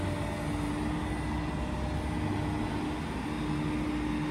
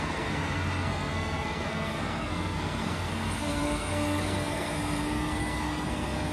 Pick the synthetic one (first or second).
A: second